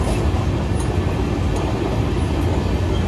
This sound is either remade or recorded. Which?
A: recorded